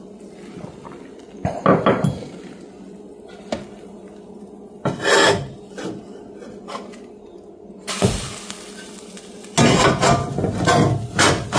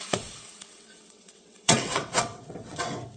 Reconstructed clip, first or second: second